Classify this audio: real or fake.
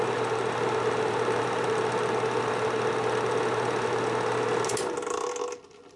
real